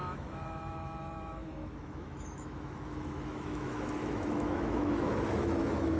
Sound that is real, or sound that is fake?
fake